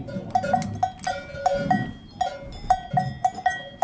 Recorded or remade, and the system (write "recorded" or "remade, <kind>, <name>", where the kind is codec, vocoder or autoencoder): recorded